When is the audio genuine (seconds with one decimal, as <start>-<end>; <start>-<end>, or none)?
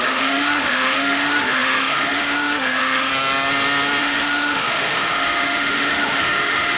3.1-4.0